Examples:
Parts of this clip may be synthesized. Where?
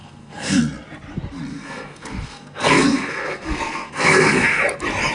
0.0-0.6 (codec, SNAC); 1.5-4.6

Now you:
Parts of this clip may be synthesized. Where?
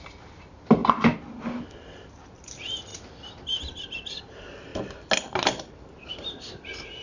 none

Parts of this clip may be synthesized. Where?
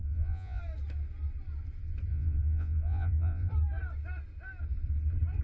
0.0-0.6 (vocoder, Vocos); 2.1-3.5